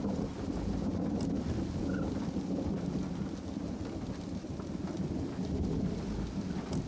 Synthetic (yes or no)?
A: no